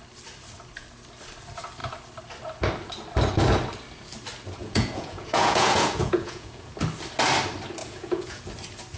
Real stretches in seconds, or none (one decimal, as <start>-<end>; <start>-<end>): 0.0-4.6; 6.7-7.8; 8.4-9.0